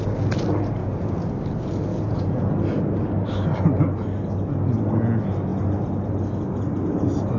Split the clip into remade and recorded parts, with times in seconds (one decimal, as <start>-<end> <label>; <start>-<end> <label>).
0.0-0.8 recorded; 0.8-1.3 remade; 1.3-1.9 recorded; 1.9-2.5 remade; 2.5-7.4 recorded